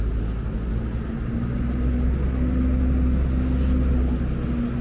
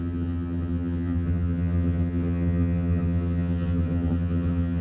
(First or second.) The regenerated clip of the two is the second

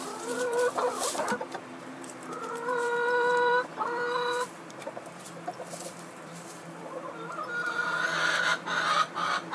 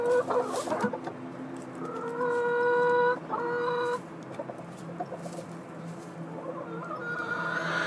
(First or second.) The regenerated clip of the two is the first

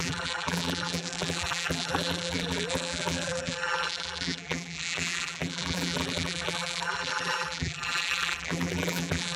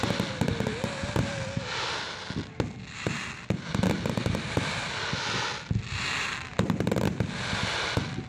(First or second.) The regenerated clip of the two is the first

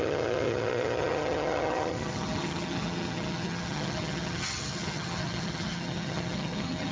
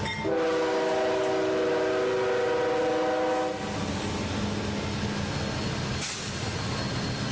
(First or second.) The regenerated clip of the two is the first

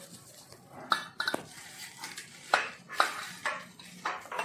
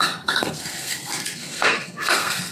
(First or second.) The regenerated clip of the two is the second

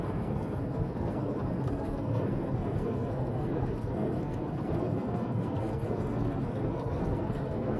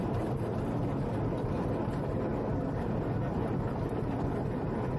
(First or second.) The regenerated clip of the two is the first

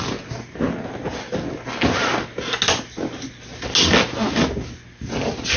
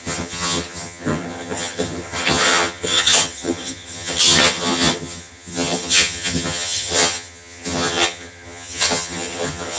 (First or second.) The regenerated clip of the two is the second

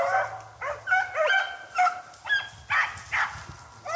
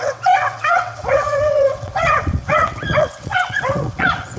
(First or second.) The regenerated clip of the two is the second